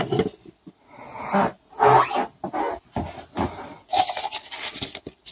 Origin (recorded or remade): recorded